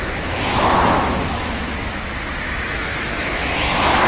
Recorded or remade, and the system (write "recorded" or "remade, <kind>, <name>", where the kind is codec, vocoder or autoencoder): remade, autoencoder, DAC-VAE